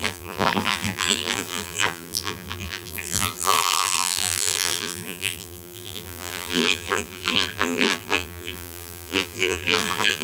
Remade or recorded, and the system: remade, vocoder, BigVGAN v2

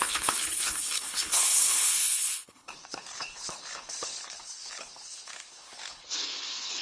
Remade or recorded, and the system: remade, codec, HILCodec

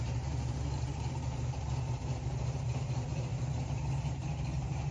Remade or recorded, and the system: remade, vocoder, BigVGAN v2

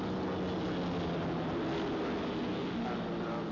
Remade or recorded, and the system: recorded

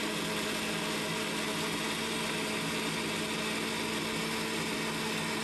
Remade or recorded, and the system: recorded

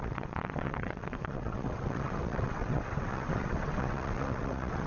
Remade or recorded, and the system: remade, vocoder, WaveNeXt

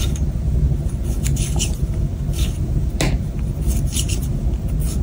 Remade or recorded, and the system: recorded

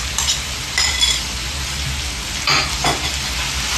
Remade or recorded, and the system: recorded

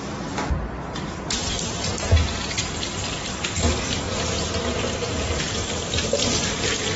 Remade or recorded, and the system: remade, vocoder, BigVGAN v2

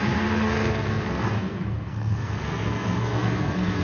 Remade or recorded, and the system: remade, codec, SNAC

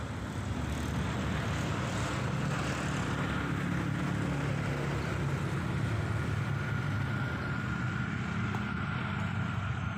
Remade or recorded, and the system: recorded